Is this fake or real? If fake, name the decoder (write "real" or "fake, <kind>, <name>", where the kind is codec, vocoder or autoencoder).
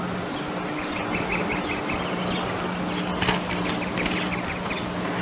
real